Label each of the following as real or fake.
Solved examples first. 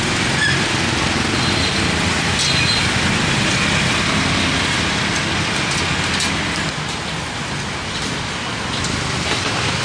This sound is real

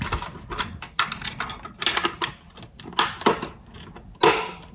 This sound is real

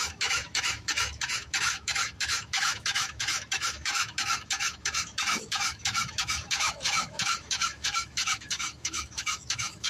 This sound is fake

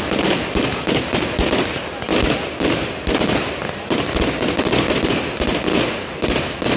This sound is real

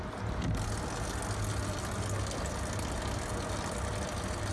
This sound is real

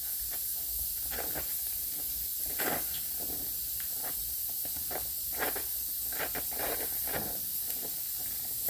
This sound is real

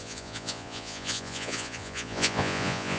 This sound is fake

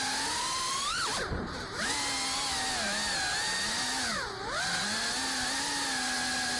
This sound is real